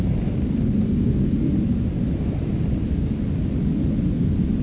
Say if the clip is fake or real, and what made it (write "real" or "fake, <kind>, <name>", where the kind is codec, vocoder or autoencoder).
real